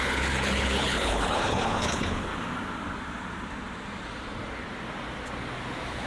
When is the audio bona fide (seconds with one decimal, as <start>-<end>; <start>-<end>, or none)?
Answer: 2.3-6.1